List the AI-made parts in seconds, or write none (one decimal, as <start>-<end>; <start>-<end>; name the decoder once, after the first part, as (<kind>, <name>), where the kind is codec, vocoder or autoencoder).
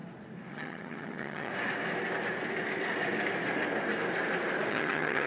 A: 0.5-1.5 (vocoder, HiFi-GAN); 4.7-5.3